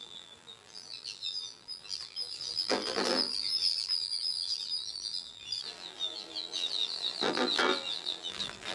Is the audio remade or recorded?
remade